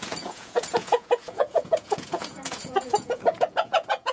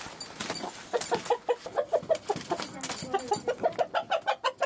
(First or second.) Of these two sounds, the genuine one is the second